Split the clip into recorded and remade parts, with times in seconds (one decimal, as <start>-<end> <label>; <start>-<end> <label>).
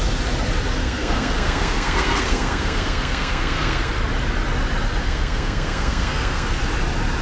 0.0-0.8 recorded; 0.8-3.9 remade; 3.9-5.0 recorded; 5.0-6.6 remade; 6.6-7.2 recorded